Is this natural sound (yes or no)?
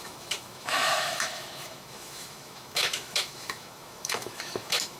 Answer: no